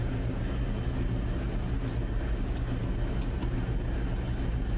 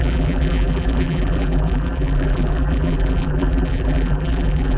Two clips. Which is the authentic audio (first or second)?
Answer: first